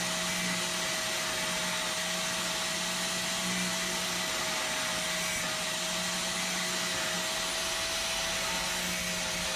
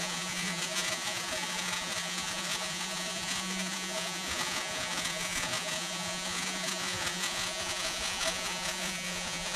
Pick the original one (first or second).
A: first